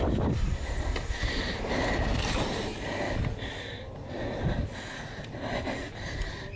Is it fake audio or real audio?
real